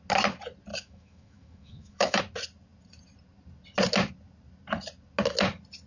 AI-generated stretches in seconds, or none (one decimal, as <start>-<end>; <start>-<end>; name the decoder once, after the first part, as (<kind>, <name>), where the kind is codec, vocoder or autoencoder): 0.7-2.2 (autoencoder, DAC-VAE)